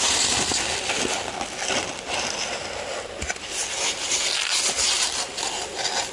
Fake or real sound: real